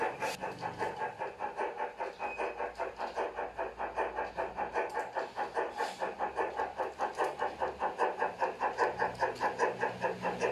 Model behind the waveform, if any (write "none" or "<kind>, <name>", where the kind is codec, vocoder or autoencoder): none